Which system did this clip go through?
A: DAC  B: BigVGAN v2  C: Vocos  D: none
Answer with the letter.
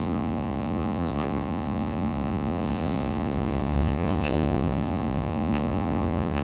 C